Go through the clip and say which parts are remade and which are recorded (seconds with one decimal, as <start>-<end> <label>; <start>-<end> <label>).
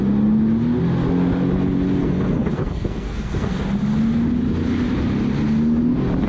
0.0-2.0 recorded; 2.0-3.6 remade; 3.6-6.3 recorded